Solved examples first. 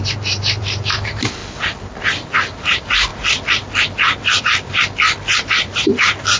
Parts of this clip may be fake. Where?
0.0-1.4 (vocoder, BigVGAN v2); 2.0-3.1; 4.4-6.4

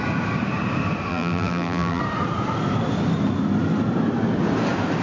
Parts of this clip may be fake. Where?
1.1-2.0 (vocoder, BigVGAN v2)